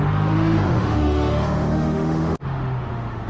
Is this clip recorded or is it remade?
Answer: remade